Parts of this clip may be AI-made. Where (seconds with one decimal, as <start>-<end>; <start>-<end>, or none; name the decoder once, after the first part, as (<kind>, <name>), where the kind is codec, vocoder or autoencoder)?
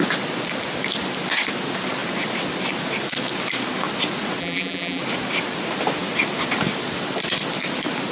4.4-5.0 (vocoder, BigVGAN v2)